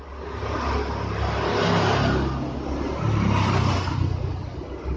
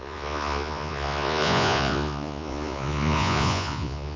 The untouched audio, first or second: first